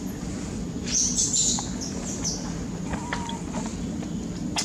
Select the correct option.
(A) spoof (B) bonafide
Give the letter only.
B